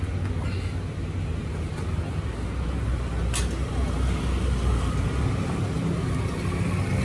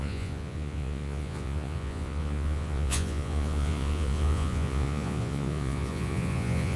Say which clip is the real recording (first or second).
first